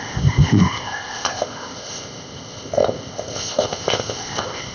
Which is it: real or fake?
fake